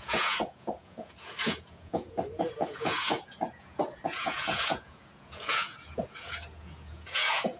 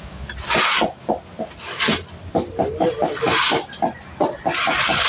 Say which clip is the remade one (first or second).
first